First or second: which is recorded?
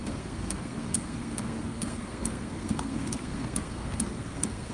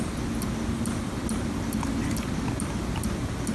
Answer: second